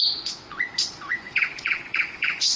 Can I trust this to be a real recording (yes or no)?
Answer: no